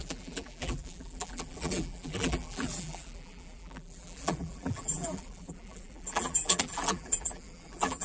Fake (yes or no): yes